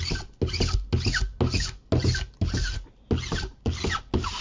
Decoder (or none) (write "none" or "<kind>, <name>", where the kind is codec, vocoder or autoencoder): none